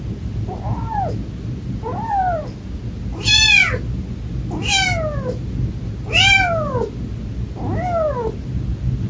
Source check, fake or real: real